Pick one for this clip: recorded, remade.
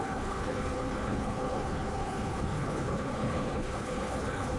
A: remade